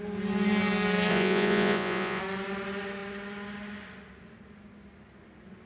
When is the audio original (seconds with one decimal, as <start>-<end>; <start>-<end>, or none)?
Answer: 0.0-1.1; 2.2-5.7